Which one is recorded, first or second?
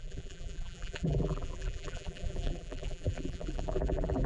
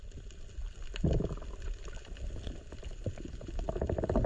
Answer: second